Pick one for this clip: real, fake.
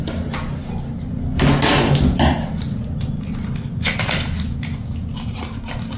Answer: real